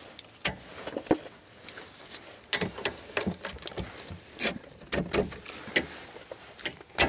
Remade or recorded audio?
recorded